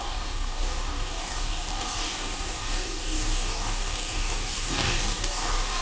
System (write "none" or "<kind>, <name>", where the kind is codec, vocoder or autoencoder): codec, DAC